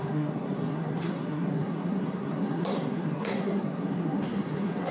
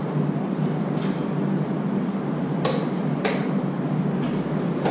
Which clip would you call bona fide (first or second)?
second